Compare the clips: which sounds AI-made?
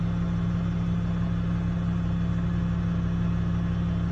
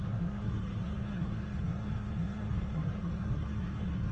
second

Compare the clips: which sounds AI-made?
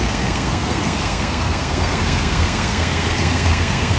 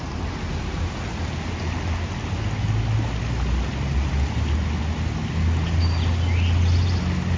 first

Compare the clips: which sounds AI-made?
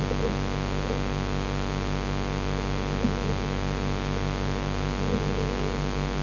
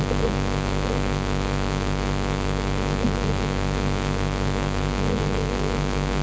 second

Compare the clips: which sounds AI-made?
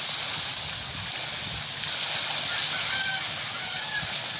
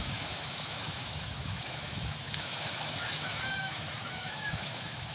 second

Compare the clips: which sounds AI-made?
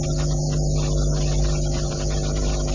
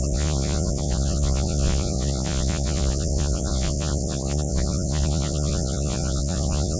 second